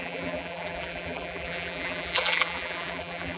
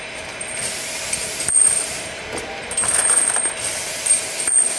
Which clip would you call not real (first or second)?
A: first